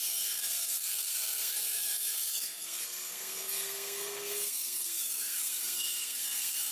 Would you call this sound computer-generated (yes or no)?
yes